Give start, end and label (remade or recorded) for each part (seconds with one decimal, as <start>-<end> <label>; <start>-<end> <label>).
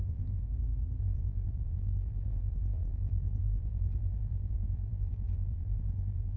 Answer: 0.0-0.4 remade; 0.4-1.0 recorded; 1.0-6.4 remade